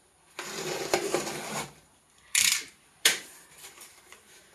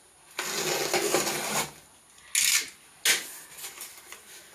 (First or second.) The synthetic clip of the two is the first